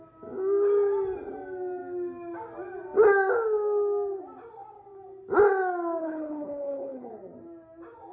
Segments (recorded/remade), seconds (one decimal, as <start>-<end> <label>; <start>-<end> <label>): 0.0-6.0 recorded; 6.0-7.1 remade; 7.1-8.1 recorded